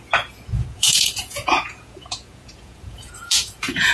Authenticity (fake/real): fake